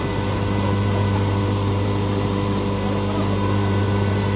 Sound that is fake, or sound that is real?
fake